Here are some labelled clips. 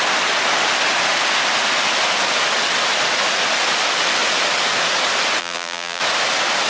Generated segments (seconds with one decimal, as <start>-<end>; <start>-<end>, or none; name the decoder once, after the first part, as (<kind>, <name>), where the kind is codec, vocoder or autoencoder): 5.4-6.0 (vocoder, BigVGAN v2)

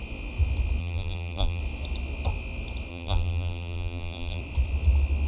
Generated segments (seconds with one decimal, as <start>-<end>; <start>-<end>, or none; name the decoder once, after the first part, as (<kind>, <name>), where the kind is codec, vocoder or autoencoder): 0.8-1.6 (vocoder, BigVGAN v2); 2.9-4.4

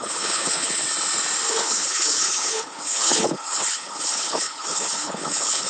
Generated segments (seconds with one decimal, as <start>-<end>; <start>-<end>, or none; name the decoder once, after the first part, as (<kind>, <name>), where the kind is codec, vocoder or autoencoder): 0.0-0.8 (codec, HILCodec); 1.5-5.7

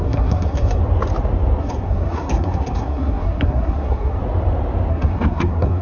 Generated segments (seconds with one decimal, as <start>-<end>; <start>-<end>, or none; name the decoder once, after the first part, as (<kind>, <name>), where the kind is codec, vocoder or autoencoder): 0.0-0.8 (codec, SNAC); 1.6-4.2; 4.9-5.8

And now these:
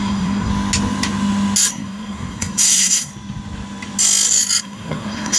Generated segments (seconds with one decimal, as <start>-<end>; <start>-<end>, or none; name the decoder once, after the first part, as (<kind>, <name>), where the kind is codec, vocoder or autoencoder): 0.0-0.5 (codec, SNAC); 1.7-3.1; 4.6-5.4

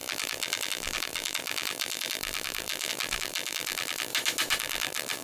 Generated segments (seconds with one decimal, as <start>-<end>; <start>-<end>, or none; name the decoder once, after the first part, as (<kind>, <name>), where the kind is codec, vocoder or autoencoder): 0.0-4.1 (vocoder, BigVGAN v2); 4.6-5.2

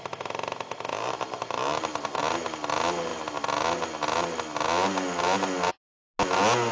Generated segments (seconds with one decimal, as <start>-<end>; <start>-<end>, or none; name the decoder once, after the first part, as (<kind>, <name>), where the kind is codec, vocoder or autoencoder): 0.9-2.2 (vocoder, BigVGAN v2)

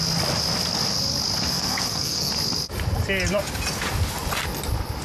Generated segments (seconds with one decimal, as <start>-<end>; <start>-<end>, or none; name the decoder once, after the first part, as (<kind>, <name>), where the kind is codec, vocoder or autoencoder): 1.5-2.3 (codec, SNAC)